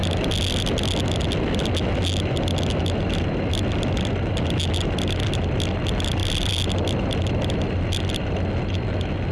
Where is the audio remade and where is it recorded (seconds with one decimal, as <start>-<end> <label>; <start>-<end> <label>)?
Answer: 0.0-9.3 recorded

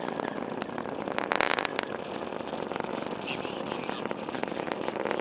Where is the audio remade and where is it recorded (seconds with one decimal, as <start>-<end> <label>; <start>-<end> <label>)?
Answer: 0.0-5.2 recorded